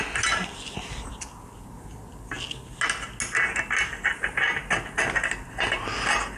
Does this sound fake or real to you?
real